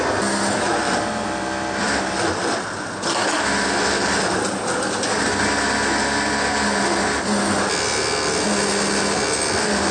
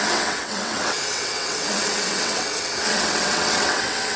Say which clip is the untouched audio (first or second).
first